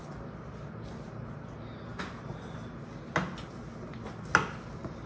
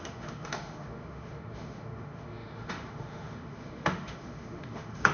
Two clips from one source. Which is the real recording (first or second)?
first